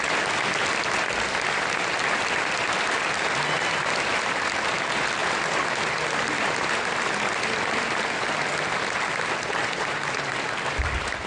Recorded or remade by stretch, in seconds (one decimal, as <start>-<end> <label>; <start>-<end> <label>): 0.0-11.3 recorded